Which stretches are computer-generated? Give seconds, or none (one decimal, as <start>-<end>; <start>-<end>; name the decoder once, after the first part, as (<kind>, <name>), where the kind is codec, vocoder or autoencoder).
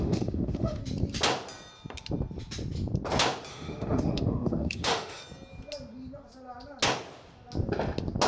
0.0-0.8 (autoencoder, DAC-VAE); 3.5-5.2